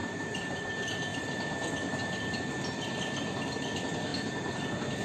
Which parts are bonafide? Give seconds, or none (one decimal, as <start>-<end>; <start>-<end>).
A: 0.7-1.1; 2.4-4.1; 4.6-5.0